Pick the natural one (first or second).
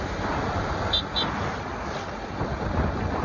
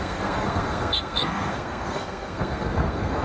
first